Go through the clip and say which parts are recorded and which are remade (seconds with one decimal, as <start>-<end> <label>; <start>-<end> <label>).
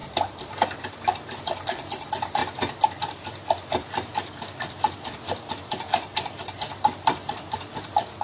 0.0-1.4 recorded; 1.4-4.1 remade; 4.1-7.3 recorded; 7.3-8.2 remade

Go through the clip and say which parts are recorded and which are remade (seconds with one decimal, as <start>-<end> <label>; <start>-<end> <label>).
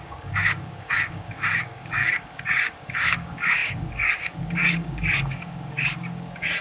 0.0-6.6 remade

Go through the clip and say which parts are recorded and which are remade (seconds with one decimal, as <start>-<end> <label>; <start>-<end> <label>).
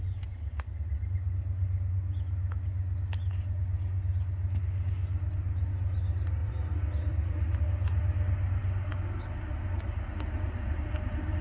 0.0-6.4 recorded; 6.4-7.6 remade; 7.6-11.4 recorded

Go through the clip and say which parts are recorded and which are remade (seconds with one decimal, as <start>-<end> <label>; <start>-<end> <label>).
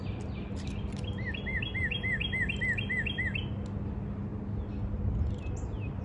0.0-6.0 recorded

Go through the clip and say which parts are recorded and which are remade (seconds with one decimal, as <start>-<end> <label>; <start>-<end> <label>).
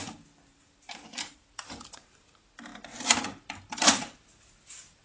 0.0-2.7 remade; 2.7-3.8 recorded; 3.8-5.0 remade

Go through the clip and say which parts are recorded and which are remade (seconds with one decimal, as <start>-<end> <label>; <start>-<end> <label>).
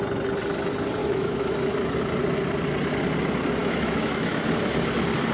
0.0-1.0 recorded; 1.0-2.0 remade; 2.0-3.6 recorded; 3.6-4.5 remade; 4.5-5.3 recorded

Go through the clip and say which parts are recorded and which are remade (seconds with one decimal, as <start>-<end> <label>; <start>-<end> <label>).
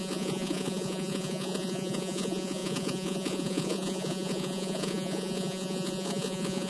0.0-6.7 remade